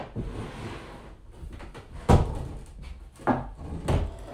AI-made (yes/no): no